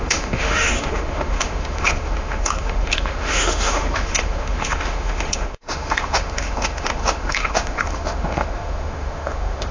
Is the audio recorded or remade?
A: remade